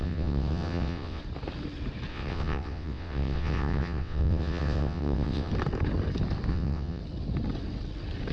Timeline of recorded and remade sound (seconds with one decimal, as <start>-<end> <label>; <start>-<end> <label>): 0.0-1.2 remade; 1.2-2.1 recorded; 2.1-5.5 remade; 5.5-6.5 recorded; 6.5-7.0 remade; 7.0-8.3 recorded